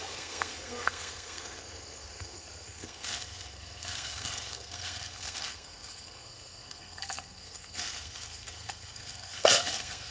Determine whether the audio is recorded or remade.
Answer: remade